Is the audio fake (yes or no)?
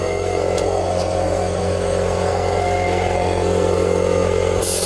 yes